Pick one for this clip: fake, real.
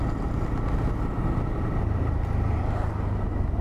real